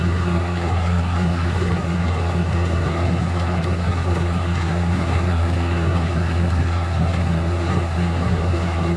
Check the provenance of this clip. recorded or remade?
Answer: remade